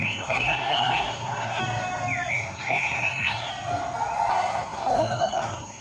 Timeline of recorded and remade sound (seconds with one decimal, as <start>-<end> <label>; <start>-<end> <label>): 0.0-1.6 remade; 1.6-2.3 recorded; 2.3-3.5 remade; 3.5-4.3 recorded; 4.3-5.8 remade